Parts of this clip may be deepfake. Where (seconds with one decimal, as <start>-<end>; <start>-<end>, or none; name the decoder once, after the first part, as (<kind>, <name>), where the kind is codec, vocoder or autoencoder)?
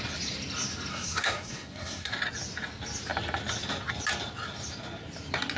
0.9-2.1 (codec, SNAC)